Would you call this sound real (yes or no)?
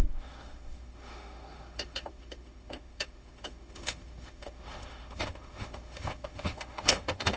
no